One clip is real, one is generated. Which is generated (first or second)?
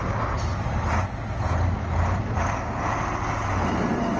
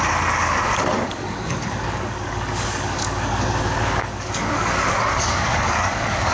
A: second